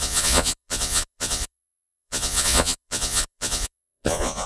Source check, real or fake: fake